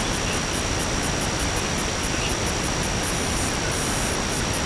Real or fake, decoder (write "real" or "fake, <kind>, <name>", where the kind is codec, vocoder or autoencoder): real